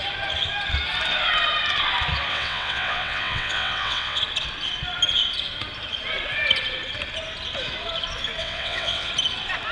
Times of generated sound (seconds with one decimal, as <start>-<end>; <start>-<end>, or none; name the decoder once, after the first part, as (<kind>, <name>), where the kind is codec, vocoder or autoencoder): 2.3-4.2 (vocoder, WaveNeXt); 8.4-9.1